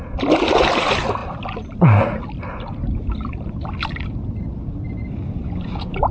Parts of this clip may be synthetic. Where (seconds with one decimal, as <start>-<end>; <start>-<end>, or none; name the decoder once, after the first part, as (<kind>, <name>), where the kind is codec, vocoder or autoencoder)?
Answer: none